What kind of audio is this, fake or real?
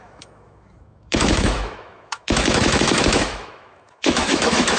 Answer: fake